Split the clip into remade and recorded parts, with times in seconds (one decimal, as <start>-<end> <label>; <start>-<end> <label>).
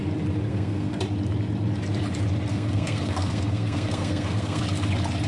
0.0-0.5 recorded; 0.5-1.0 remade; 1.0-2.5 recorded; 2.5-4.6 remade; 4.6-5.3 recorded